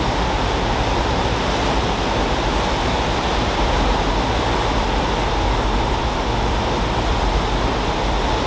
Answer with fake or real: real